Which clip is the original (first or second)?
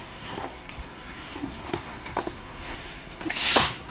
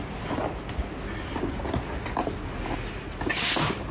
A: second